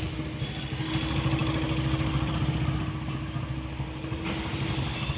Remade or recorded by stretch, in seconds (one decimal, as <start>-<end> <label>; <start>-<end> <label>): 0.0-5.2 recorded